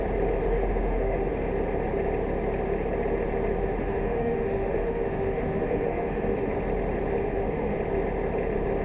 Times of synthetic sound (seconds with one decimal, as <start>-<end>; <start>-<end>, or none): 0.4-1.3; 3.6-6.6; 7.2-7.8